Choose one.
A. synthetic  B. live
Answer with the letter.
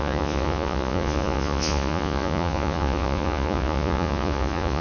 A